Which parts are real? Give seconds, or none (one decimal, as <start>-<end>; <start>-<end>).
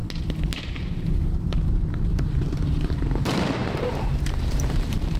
0.0-0.6